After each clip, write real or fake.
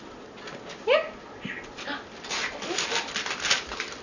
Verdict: real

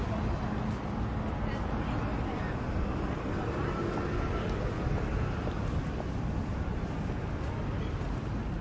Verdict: real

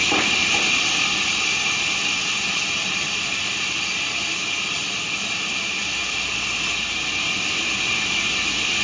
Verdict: real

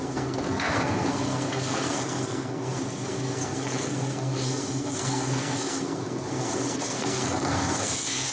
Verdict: fake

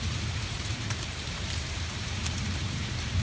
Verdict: fake